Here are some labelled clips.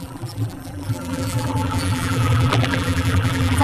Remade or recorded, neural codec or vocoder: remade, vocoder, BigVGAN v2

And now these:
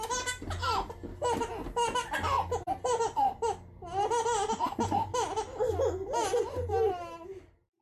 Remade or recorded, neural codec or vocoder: recorded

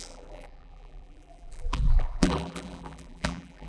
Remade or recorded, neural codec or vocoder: remade, vocoder, BigVGAN v2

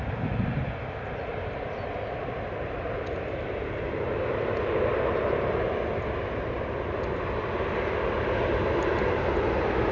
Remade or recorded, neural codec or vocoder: recorded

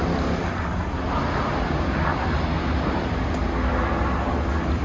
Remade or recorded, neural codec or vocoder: recorded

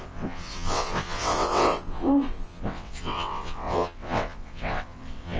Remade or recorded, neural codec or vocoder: remade, vocoder, WaveNeXt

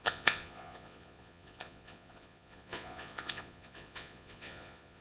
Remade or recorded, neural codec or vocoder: remade, vocoder, Vocos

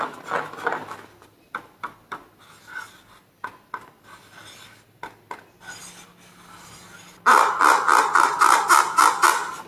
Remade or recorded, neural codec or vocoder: recorded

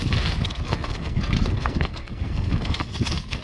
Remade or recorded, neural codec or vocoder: remade, codec, SNAC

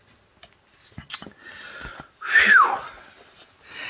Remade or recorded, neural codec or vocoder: recorded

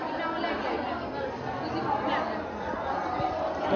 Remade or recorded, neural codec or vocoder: recorded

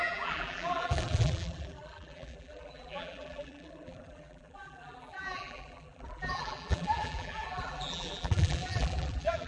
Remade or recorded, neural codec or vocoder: remade, vocoder, BigVGAN v2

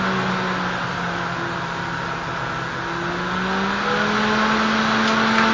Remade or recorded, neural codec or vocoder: recorded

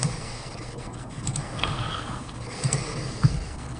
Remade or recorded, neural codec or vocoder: remade, codec, SNAC